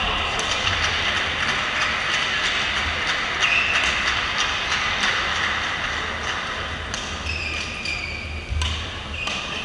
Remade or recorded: recorded